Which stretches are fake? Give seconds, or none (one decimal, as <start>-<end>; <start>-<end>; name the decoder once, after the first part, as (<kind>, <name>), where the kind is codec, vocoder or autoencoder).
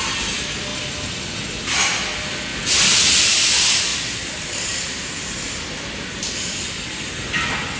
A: 3.9-5.6 (vocoder, BigVGAN v2)